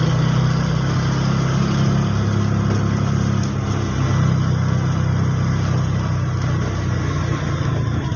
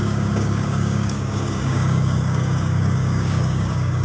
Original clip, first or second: first